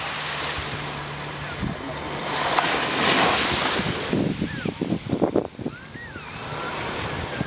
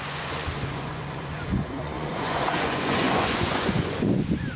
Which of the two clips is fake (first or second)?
second